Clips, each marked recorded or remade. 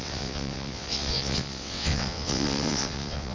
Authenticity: remade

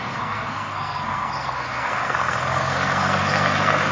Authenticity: remade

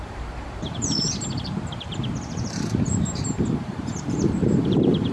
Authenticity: remade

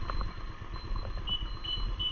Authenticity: recorded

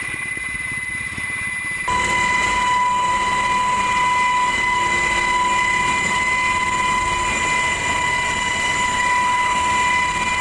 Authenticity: recorded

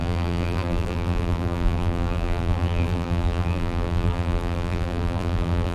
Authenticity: remade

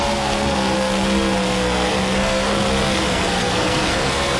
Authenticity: remade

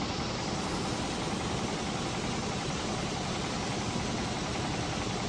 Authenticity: recorded